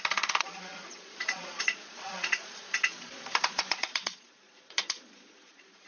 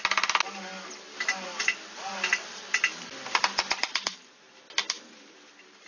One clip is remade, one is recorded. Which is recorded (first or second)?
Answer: second